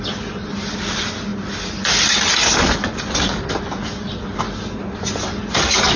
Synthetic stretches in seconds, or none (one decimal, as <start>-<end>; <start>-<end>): none